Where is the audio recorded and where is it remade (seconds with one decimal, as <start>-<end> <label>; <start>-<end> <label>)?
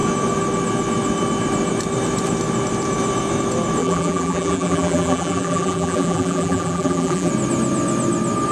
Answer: 0.0-3.8 recorded; 3.8-7.3 remade; 7.3-8.5 recorded